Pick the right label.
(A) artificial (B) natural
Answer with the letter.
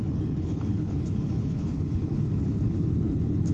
A